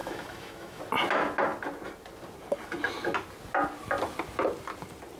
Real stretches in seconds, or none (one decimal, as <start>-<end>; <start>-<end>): 0.8-5.2